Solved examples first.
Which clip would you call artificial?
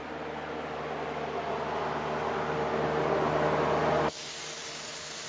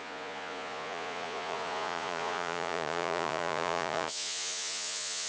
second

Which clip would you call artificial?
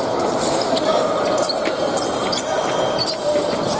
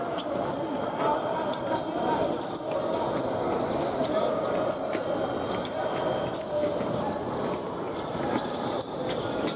first